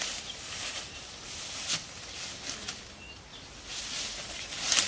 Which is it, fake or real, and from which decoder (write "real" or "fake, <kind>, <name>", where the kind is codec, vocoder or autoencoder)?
real